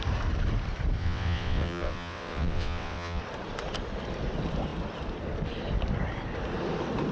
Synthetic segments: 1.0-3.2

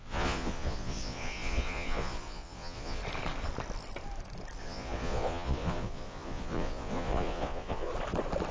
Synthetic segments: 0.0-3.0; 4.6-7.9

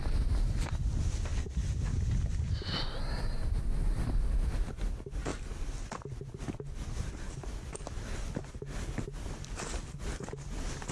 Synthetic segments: none

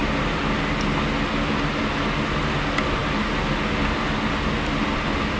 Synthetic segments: none

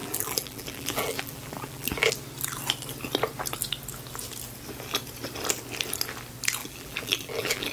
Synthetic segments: 0.0-2.1; 6.6-7.7

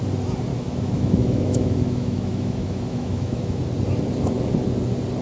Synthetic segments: 0.5-3.6